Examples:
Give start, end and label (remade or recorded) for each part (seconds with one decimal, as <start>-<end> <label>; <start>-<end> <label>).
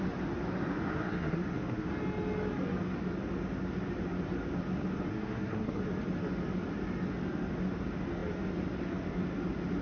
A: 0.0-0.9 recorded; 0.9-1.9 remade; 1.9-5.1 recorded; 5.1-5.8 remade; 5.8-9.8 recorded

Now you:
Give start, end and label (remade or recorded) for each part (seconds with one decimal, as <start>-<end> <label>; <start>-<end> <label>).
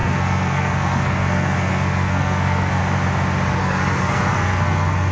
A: 0.0-2.8 remade; 2.8-3.6 recorded; 3.6-5.1 remade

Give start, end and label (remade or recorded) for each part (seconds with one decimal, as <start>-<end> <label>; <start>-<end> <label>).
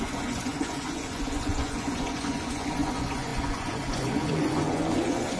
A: 0.0-5.4 remade